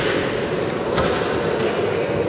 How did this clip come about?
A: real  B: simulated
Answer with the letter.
A